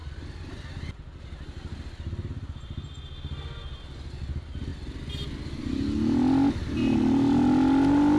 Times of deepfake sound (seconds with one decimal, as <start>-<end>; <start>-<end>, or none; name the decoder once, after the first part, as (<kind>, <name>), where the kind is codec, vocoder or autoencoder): none